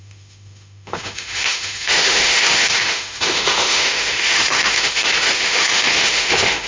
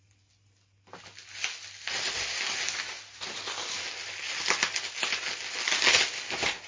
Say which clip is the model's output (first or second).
first